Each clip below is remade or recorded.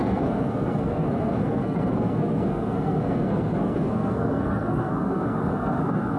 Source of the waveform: remade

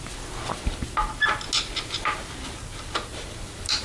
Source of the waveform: recorded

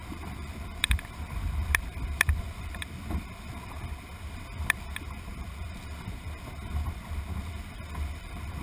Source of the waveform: remade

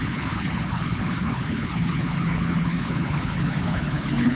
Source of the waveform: remade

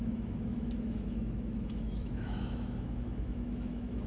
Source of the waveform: remade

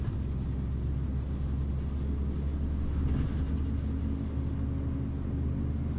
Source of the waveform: recorded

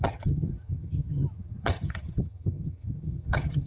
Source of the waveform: remade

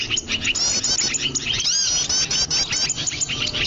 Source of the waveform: recorded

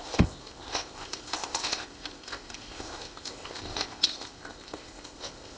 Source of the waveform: remade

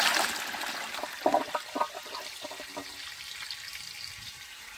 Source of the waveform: recorded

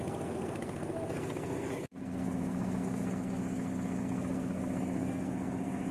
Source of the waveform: remade